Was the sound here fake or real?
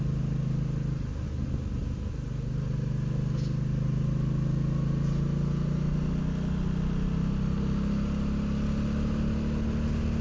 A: real